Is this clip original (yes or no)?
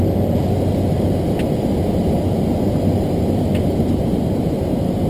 yes